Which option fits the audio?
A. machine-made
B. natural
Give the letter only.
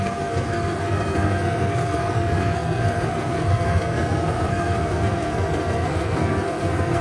A